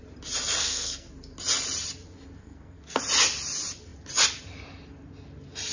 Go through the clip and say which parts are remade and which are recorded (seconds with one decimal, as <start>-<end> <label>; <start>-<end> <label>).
0.0-0.6 recorded; 0.6-1.1 remade; 1.1-2.4 recorded; 2.4-3.0 remade; 3.0-5.7 recorded